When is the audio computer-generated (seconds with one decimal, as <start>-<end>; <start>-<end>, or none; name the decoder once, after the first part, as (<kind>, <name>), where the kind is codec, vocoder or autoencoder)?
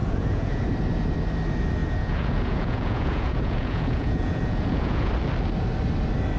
0.0-0.6 (vocoder, Vocos); 1.8-5.1